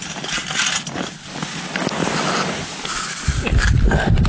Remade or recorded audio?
recorded